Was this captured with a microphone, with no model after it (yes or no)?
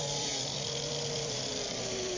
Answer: no